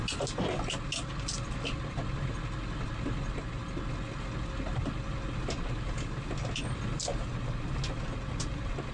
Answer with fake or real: real